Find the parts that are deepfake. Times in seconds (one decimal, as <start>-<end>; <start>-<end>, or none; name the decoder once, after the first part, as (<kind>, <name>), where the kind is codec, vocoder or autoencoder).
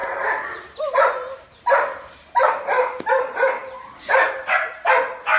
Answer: 0.0-3.0 (vocoder, BigVGAN v2)